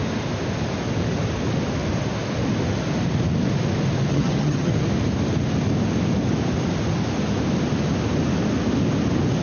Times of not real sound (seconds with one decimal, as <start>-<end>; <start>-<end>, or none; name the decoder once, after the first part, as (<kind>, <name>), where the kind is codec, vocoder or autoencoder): 4.1-4.7 (vocoder, HiFi-GAN)